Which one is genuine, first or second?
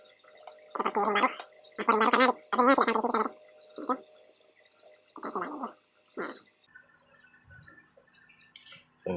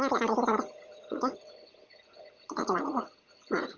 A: first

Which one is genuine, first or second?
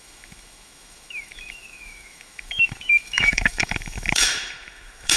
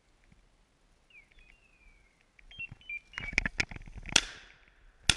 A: second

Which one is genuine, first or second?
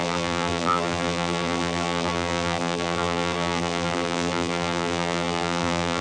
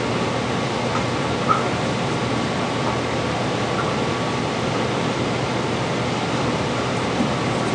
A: second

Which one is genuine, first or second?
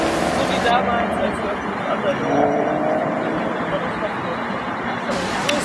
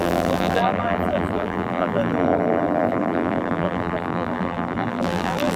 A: first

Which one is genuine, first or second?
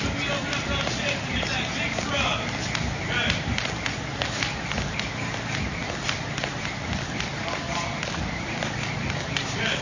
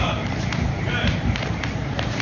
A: first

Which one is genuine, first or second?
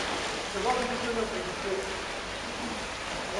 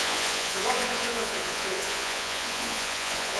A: first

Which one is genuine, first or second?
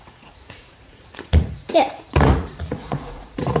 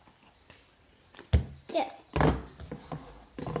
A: second